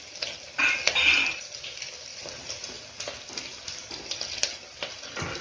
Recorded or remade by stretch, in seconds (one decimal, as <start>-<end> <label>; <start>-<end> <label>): 0.0-5.4 recorded

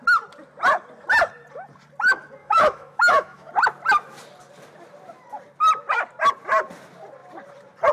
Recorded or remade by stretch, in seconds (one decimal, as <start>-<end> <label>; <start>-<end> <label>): 0.0-2.4 recorded; 2.4-3.5 remade; 3.5-7.9 recorded

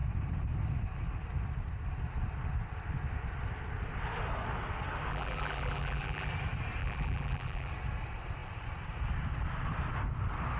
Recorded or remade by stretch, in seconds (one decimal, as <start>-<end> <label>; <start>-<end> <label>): 0.0-5.1 recorded; 5.1-6.3 remade; 6.3-6.8 recorded; 6.8-7.7 remade; 7.7-10.6 recorded

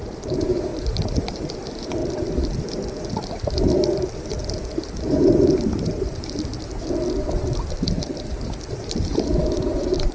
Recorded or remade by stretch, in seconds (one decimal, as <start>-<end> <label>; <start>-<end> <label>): 0.0-2.0 remade; 2.0-4.8 recorded; 4.8-6.5 remade; 6.5-8.7 recorded; 8.7-10.1 remade

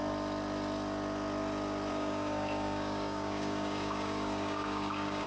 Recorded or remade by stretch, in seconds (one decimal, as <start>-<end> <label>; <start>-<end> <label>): 0.0-1.9 recorded; 1.9-5.3 remade

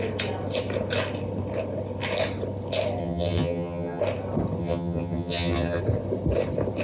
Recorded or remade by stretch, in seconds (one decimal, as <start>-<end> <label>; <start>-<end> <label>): 0.0-3.0 recorded; 3.0-4.0 remade; 4.0-4.6 recorded; 4.6-5.8 remade; 5.8-6.8 recorded

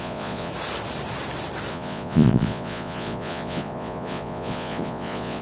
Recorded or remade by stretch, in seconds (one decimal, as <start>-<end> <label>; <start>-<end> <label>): 0.0-0.5 remade; 0.5-1.7 recorded; 1.7-5.4 remade

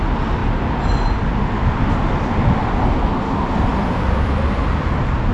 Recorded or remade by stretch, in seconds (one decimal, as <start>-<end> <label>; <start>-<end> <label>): 0.0-5.3 recorded